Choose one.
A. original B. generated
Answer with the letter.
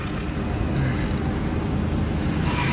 A